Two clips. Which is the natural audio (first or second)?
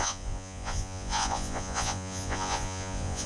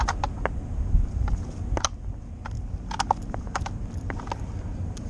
second